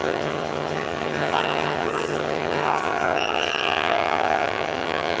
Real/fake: fake